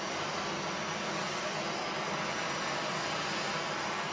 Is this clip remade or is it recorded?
recorded